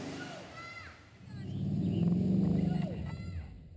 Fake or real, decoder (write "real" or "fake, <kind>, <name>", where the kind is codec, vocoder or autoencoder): real